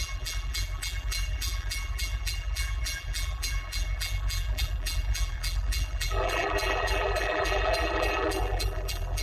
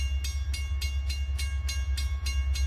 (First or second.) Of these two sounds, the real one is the second